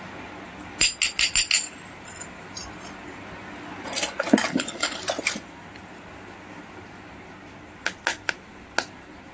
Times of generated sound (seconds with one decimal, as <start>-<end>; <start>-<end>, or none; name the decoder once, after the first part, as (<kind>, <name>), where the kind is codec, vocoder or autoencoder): 4.5-5.0 (codec, HILCodec)